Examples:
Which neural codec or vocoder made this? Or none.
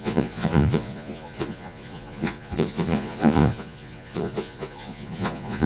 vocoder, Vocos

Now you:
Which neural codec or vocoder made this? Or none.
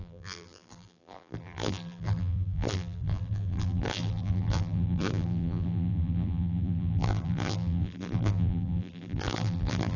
vocoder, BigVGAN v2